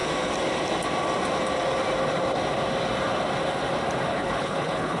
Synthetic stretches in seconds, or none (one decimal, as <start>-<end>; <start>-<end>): 4.1-5.0